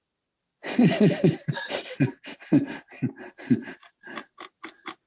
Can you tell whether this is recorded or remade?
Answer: recorded